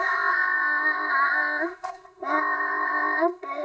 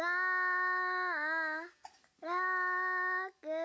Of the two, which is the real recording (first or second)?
second